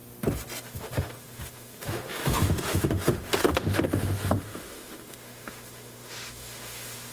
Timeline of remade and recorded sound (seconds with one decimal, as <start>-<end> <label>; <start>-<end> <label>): 0.0-0.6 recorded; 0.6-7.1 remade

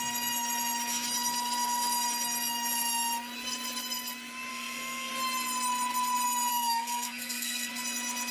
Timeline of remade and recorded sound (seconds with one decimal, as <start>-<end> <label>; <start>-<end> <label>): 0.0-4.5 recorded; 4.5-5.1 remade; 5.1-6.5 recorded; 6.5-7.7 remade; 7.7-8.3 recorded